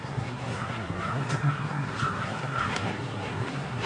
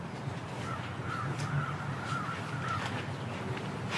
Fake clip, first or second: first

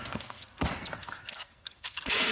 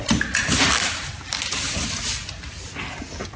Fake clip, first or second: first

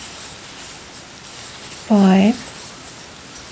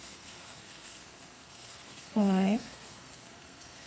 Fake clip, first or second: second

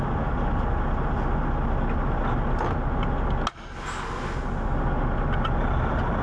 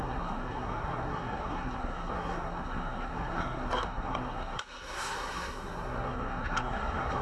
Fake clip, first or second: second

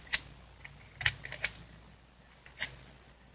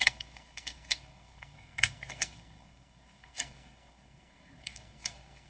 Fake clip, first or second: second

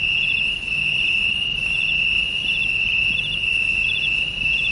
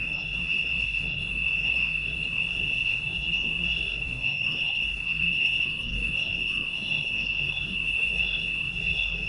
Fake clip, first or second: second